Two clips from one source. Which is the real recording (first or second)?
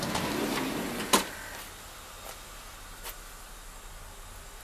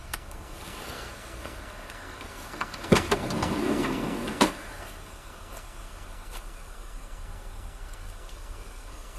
first